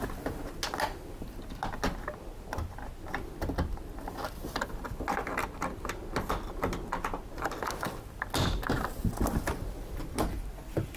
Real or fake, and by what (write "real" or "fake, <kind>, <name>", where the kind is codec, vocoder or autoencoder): real